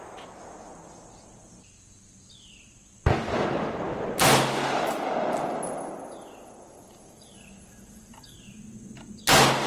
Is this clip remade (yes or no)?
no